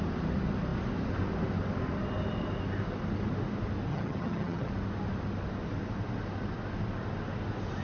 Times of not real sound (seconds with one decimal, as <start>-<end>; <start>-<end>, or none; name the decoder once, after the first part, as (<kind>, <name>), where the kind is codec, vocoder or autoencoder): 3.9-4.7 (vocoder, HiFi-GAN)